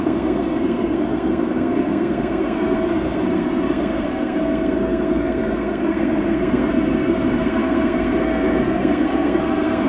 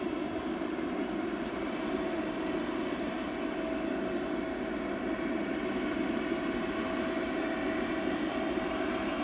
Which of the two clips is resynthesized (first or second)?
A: first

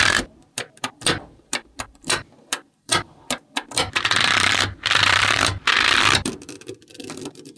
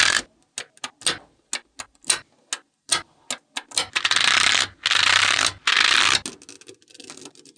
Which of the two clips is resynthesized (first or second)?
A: first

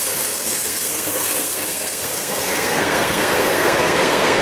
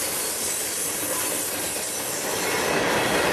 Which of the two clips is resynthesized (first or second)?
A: first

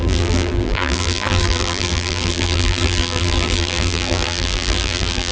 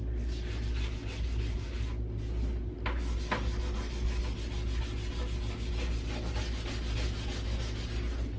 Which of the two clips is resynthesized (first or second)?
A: first